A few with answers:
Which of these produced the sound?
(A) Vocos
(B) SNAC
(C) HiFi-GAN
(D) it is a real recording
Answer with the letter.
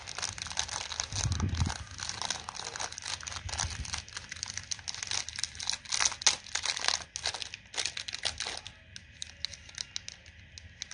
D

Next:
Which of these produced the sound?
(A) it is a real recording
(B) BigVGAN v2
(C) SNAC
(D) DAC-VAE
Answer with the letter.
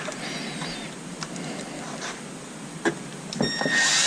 A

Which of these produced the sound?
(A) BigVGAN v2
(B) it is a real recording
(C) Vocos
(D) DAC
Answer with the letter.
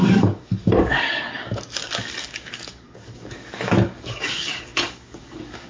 D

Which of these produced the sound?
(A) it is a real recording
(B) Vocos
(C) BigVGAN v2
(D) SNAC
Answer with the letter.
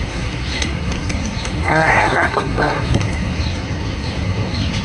D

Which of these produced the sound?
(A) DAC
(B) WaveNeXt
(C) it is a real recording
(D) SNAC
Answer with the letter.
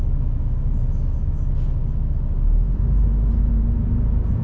C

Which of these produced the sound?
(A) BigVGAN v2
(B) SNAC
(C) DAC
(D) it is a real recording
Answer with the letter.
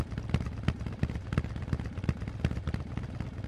D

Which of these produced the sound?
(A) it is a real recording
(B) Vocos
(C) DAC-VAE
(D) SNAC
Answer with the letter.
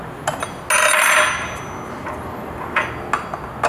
A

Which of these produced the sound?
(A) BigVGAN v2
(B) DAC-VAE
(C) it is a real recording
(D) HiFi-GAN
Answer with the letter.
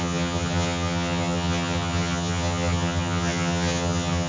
D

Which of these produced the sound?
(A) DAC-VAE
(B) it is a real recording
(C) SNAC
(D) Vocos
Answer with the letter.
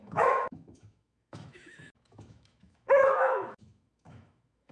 A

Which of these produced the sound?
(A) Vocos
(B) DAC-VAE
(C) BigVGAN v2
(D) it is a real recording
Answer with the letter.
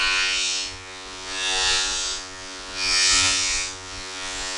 A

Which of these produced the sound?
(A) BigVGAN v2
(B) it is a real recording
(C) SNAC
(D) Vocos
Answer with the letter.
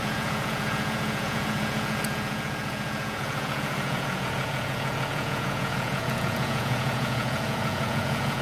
D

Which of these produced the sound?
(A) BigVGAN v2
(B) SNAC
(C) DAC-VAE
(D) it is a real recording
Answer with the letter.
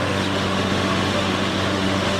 C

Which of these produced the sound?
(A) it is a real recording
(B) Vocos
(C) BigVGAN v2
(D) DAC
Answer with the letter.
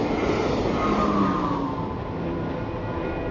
A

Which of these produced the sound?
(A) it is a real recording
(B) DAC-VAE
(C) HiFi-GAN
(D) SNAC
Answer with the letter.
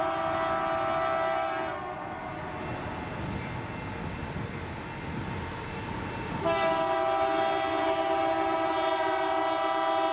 A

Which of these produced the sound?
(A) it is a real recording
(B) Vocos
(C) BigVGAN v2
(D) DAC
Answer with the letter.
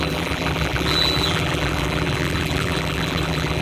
C